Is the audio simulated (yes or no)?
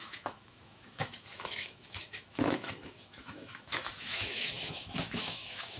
yes